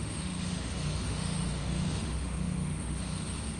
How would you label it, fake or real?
fake